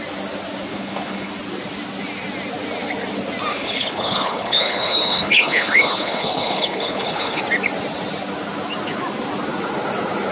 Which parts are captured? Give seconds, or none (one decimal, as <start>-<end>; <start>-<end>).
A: 0.0-0.7; 1.3-3.5; 7.4-10.3